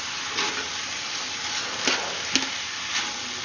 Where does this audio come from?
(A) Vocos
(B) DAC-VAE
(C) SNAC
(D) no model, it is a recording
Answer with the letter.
D